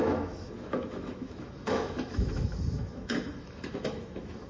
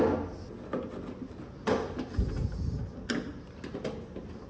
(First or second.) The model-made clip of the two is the first